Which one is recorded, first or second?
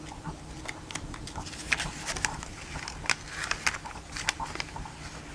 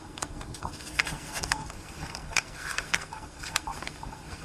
first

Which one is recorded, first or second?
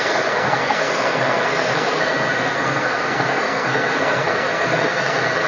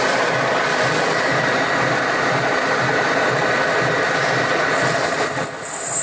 second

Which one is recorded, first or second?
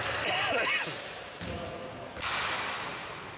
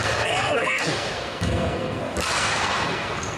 first